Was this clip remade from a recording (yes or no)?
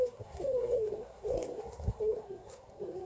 yes